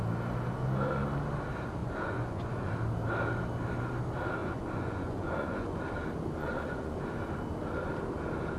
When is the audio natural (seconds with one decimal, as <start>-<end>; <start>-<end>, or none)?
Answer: 0.0-1.8; 2.7-4.4; 5.8-6.4; 7.0-8.6